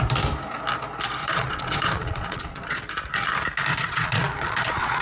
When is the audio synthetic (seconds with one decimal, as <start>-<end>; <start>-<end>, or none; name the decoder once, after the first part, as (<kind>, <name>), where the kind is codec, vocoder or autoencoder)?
1.2-2.8 (vocoder, Vocos); 3.7-5.0